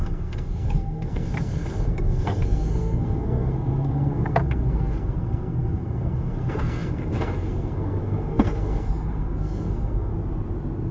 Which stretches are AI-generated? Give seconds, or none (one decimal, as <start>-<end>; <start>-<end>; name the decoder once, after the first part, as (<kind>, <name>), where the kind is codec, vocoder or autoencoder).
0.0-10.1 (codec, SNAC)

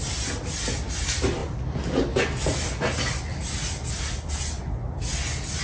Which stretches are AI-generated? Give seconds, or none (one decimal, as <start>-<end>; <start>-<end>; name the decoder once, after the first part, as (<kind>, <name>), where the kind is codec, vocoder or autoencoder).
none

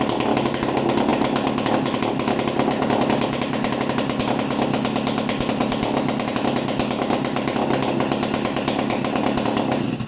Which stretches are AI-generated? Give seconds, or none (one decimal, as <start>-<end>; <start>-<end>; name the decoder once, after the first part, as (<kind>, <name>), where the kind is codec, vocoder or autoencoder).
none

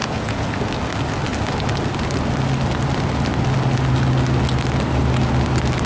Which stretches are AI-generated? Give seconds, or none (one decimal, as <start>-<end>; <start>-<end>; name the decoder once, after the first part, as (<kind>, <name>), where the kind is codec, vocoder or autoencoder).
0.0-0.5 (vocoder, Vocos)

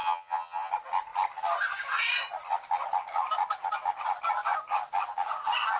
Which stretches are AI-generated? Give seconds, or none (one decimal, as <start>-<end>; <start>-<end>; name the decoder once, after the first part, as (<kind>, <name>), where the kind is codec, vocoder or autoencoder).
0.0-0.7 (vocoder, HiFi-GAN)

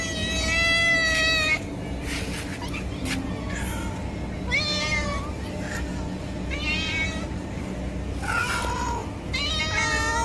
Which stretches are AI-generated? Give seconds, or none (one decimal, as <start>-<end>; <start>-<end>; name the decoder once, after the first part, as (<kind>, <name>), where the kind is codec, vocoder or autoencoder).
none

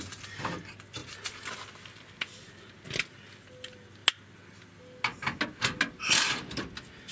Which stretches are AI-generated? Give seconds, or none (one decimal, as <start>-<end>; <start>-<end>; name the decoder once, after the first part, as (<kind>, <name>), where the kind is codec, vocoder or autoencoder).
none